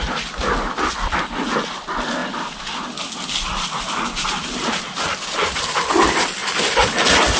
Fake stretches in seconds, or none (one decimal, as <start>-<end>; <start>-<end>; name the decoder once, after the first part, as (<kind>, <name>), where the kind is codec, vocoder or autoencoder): none